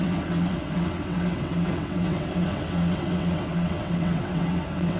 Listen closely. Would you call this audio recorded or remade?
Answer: remade